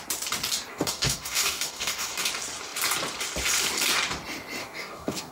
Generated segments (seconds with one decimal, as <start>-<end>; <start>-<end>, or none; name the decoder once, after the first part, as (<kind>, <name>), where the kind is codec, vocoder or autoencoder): 0.7-2.3 (codec, DAC); 4.6-5.3